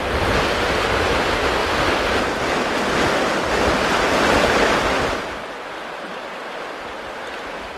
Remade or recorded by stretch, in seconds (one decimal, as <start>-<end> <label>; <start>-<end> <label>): 0.0-7.8 recorded